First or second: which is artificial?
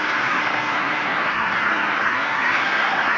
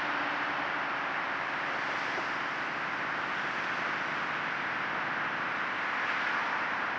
first